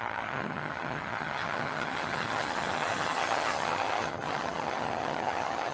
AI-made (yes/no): yes